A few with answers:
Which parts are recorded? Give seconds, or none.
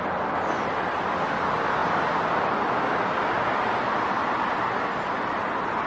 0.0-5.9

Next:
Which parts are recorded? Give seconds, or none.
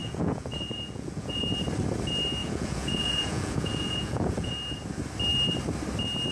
1.4-2.4; 4.5-6.3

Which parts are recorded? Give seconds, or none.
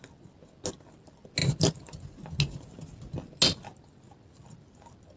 0.0-5.2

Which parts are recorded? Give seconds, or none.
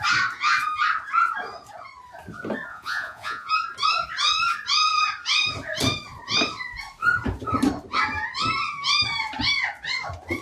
0.0-2.7; 3.5-10.4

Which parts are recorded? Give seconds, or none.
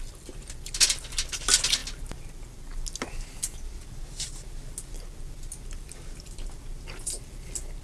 0.0-7.8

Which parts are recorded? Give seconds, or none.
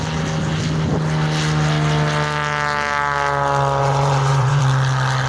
0.0-3.8; 4.6-5.3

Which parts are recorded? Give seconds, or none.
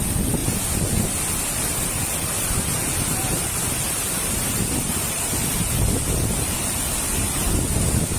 0.0-8.2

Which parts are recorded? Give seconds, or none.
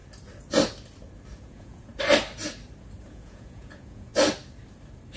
0.0-1.4; 1.9-3.0; 4.1-5.2